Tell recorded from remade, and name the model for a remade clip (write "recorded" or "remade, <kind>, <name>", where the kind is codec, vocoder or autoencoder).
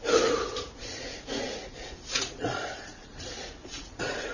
remade, vocoder, Vocos